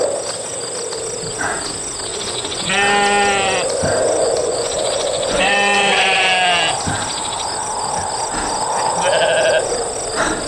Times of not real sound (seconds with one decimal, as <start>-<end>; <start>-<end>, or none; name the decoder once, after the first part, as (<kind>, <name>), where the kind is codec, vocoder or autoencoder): 2.1-2.7 (vocoder, Vocos); 4.2-6.2